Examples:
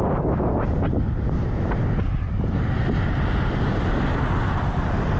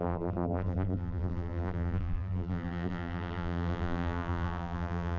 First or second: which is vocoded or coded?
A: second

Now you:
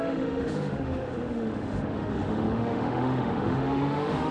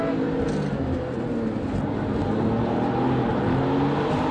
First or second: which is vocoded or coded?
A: first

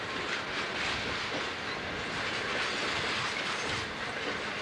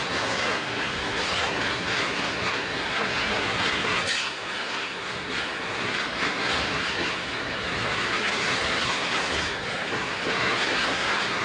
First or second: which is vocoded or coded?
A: second